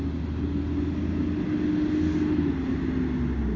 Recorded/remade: recorded